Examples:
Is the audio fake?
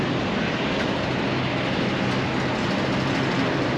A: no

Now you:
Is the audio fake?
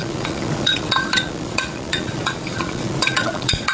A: yes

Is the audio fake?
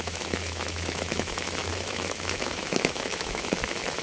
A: yes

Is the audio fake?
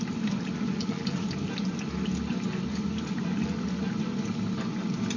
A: no